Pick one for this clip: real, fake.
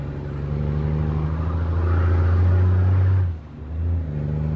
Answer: real